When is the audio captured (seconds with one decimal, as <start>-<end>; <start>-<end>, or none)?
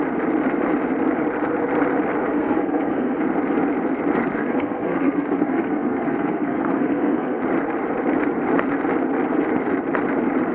0.0-2.3; 3.2-4.4; 7.4-10.5